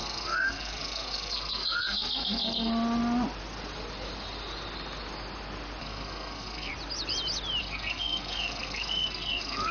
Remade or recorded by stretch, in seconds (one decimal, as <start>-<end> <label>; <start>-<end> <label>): 0.0-2.7 remade; 2.7-5.8 recorded; 5.8-6.7 remade; 6.7-7.6 recorded; 7.6-9.7 remade